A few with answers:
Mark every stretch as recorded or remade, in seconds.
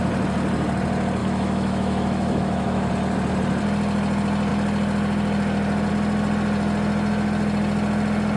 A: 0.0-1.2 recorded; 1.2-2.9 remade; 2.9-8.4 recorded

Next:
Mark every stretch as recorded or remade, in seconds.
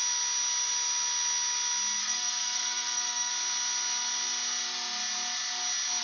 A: 0.0-2.0 recorded; 2.0-3.3 remade; 3.3-6.0 recorded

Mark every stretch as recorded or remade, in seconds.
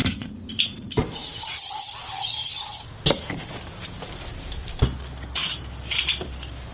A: 0.0-0.5 remade; 0.5-6.7 recorded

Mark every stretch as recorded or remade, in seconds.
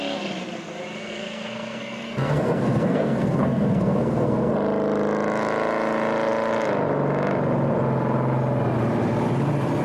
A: 0.0-1.0 recorded; 1.0-4.5 remade; 4.5-9.8 recorded